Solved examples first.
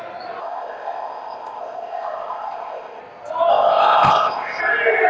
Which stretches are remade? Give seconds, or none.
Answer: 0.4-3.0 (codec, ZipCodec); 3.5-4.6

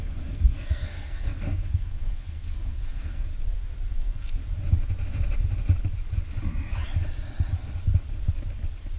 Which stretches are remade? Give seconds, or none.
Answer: 0.0-3.3 (codec, SNAC); 3.9-4.4

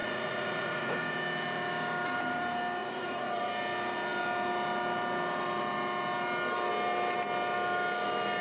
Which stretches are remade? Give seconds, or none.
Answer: 0.0-1.0 (vocoder, Vocos); 2.8-3.5